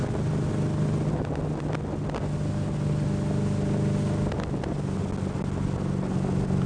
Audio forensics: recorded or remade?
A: recorded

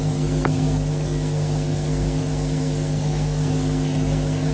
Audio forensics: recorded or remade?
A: remade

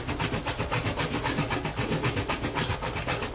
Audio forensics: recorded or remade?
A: recorded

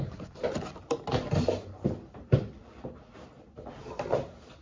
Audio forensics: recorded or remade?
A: recorded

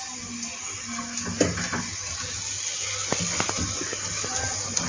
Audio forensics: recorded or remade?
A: recorded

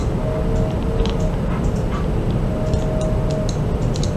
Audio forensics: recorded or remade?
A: recorded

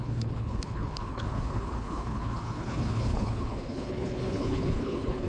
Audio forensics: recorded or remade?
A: remade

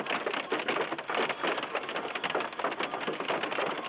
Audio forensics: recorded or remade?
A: recorded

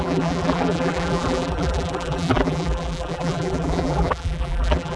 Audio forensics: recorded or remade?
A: remade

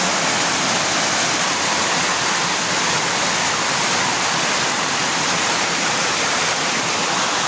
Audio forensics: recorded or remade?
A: recorded